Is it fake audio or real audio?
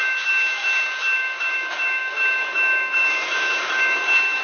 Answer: fake